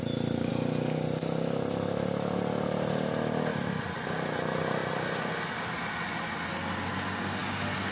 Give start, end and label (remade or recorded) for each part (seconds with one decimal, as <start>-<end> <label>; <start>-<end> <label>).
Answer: 0.0-7.9 recorded